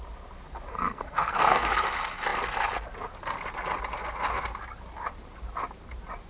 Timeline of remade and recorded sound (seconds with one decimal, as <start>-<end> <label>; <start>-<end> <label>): 0.0-0.7 recorded; 0.7-1.7 remade; 1.7-6.3 recorded